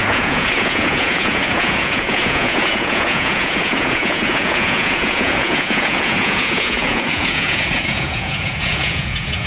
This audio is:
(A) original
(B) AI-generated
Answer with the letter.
B